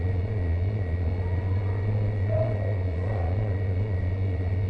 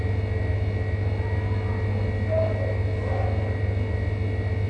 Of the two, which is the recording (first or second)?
second